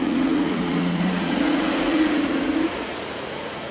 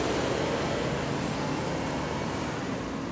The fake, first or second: first